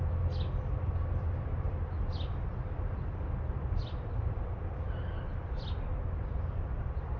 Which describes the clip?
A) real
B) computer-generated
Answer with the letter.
A